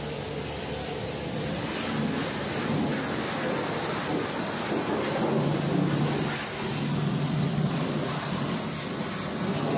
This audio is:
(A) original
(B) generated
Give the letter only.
A